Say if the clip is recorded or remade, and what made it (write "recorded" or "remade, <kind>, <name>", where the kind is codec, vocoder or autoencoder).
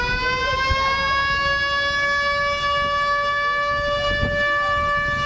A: recorded